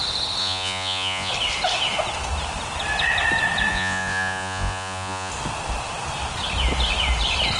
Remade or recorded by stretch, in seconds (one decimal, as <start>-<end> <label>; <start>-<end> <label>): 0.0-0.4 recorded; 0.4-1.3 remade; 1.3-3.7 recorded; 3.7-5.3 remade; 5.3-7.6 recorded